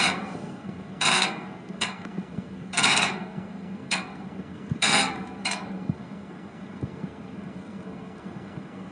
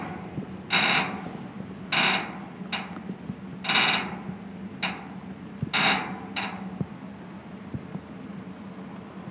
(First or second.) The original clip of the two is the second